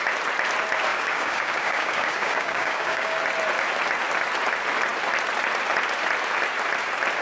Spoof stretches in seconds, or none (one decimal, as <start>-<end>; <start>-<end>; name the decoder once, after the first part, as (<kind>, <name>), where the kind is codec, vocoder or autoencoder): 0.9-3.2 (codec, DAC)

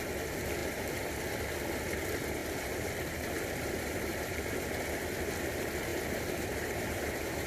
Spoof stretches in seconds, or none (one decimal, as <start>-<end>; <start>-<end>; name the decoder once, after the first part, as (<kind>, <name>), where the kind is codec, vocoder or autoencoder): 0.6-1.1 (vocoder, BigVGAN v2); 2.4-4.5; 5.9-7.5

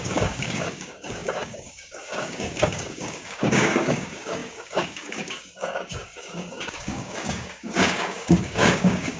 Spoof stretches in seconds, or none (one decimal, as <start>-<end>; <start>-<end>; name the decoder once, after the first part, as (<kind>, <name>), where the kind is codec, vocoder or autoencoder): 0.0-9.2 (codec, DAC)

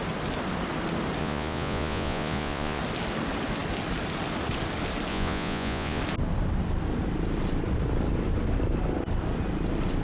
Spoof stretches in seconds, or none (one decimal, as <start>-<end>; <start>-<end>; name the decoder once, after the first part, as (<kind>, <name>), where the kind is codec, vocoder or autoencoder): 1.2-2.8 (vocoder, Vocos); 5.1-6.0